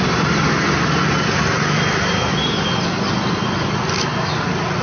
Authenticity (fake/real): real